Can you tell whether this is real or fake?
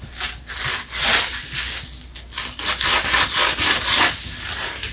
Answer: real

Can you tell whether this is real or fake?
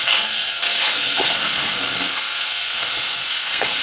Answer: fake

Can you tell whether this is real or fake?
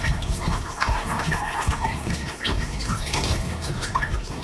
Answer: fake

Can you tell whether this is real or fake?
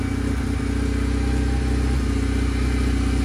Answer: real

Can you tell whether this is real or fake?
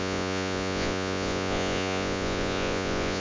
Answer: fake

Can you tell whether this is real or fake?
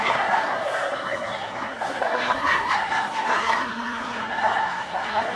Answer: fake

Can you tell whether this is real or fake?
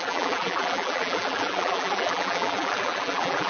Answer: fake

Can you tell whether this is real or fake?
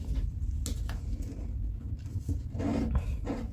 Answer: real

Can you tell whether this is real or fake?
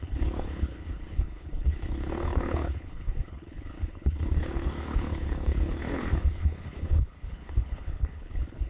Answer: fake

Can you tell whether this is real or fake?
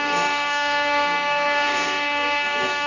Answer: fake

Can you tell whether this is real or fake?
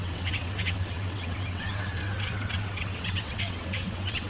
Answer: fake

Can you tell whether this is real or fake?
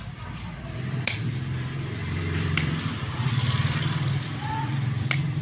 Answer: fake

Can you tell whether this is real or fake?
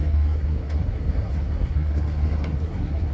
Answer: fake